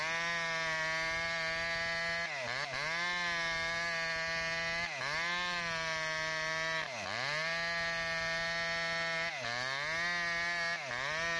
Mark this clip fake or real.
real